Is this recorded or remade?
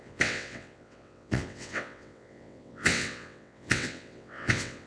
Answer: remade